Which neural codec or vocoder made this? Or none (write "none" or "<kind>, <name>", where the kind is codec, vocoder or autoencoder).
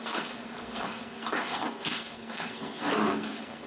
codec, SNAC